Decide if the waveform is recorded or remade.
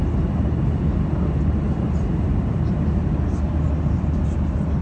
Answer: recorded